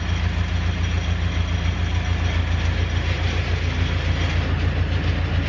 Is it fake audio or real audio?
real